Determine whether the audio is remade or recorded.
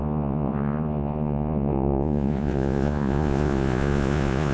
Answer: remade